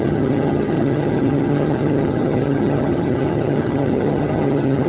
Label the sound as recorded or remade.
remade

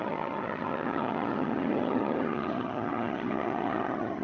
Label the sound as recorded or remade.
remade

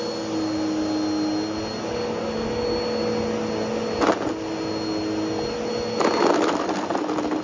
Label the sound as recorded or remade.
recorded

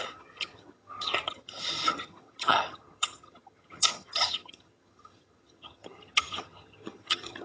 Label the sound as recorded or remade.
remade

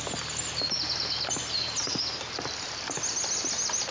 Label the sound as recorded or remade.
recorded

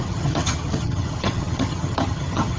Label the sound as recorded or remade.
remade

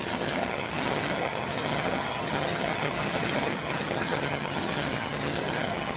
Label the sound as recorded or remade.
remade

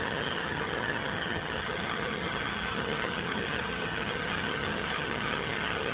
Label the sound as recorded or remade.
remade